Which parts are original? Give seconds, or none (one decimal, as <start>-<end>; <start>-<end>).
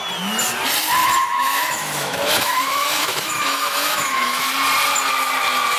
0.0-1.0; 4.5-5.8